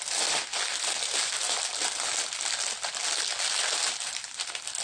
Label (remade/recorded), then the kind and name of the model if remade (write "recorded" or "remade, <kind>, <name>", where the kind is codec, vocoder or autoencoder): recorded